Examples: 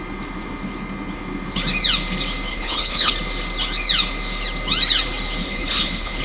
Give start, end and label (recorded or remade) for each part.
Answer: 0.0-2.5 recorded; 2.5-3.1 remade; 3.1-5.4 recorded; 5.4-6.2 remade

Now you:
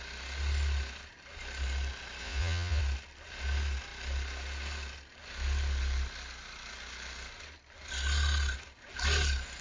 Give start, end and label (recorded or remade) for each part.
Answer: 0.0-2.2 recorded; 2.2-2.8 remade; 2.8-9.6 recorded

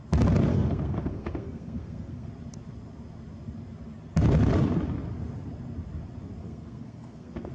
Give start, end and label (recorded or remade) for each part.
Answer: 0.0-0.5 recorded; 0.5-2.3 remade; 2.3-6.4 recorded; 6.4-7.5 remade

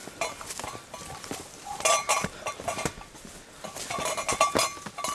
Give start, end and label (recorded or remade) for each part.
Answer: 0.0-3.1 remade; 3.1-5.1 recorded